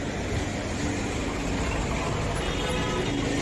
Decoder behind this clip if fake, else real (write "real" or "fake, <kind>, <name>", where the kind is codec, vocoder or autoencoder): real